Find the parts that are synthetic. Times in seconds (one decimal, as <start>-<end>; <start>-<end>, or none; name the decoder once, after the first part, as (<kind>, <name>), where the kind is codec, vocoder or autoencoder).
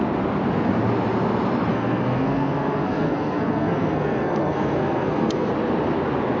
1.7-5.5 (codec, SNAC)